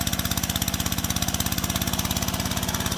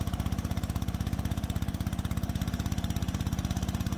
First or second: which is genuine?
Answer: first